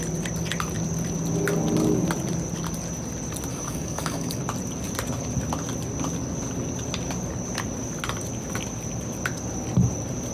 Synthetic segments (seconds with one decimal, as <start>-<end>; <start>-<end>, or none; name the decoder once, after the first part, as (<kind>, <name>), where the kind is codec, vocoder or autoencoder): 3.5-4.4 (codec, DAC)

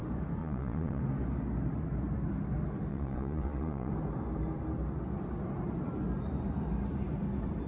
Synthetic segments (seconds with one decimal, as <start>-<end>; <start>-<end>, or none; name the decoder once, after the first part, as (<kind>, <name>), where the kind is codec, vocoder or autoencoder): 0.4-1.0 (vocoder, Vocos); 2.9-3.9

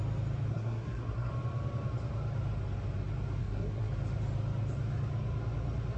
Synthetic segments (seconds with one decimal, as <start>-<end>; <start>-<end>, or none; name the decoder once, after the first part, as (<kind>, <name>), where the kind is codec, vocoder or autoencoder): 0.5-1.3 (codec, SNAC); 3.4-3.9

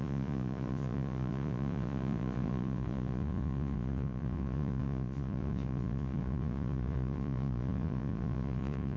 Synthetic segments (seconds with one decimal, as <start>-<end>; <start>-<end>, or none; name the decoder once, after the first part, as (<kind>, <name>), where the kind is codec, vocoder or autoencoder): 0.0-9.0 (vocoder, Vocos)

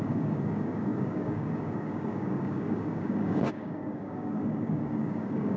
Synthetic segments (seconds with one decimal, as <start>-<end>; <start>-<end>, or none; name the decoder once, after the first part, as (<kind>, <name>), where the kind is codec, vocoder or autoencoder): 0.0-5.6 (codec, DAC)

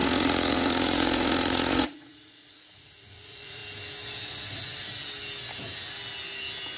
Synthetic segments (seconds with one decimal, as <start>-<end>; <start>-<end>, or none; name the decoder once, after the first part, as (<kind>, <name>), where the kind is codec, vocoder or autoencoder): 0.0-3.6 (vocoder, Vocos)

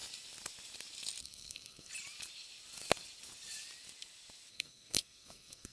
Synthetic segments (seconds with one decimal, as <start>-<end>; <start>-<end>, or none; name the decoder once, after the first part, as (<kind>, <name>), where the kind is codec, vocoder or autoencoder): 1.2-1.9 (codec, SNAC); 4.5-5.7